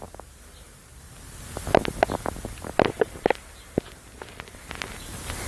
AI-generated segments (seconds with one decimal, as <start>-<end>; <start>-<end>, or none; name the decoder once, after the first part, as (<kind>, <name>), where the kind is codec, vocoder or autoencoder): none